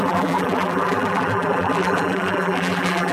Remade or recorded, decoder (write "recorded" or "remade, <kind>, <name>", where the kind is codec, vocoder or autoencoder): remade, vocoder, BigVGAN v2